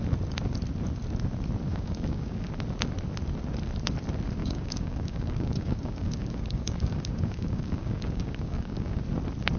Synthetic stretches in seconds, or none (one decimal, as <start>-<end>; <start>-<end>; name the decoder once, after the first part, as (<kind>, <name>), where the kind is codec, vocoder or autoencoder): 1.7-2.5 (codec, DAC); 4.4-9.0